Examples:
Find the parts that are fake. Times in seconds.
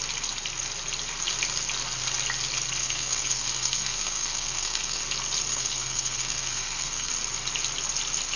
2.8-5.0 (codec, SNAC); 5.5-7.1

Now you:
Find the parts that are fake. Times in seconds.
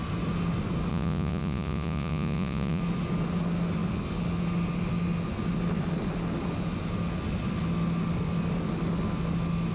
0.9-2.8 (vocoder, Vocos)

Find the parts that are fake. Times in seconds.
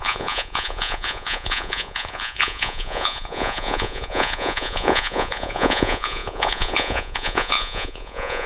0.0-8.5 (vocoder, Vocos)